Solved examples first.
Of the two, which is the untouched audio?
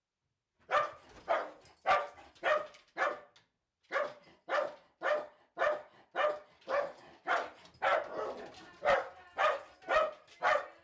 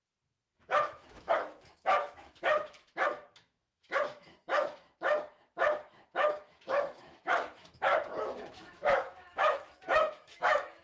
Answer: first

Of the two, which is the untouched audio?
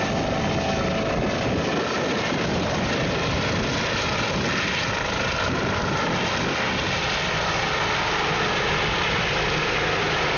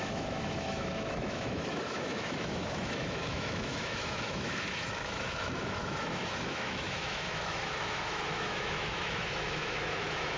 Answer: first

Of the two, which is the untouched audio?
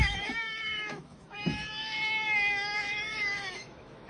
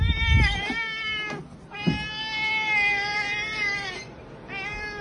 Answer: second